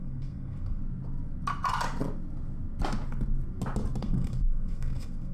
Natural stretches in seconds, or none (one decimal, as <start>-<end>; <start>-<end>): 0.8-4.0